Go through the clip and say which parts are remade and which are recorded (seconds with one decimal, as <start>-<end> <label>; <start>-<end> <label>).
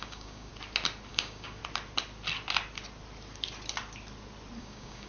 0.0-0.5 remade; 0.5-1.1 recorded; 1.1-1.6 remade; 1.6-4.6 recorded; 4.6-5.1 remade